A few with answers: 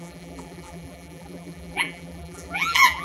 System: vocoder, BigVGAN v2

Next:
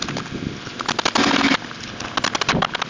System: vocoder, BigVGAN v2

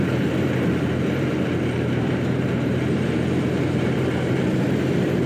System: vocoder, BigVGAN v2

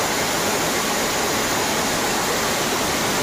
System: none